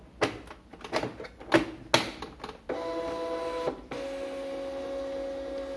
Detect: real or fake real